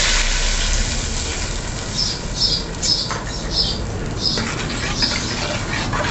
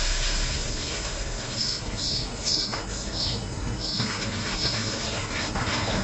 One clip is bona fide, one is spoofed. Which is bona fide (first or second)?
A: first